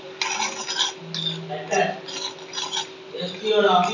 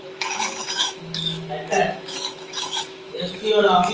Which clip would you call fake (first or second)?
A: second